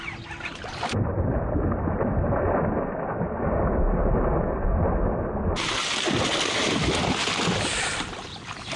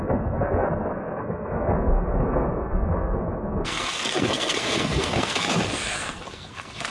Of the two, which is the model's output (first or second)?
second